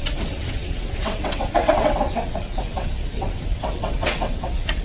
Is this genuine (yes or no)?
no